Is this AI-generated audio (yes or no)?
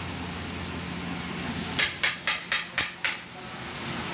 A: no